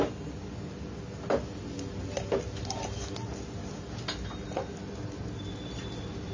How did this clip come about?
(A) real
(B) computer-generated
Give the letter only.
A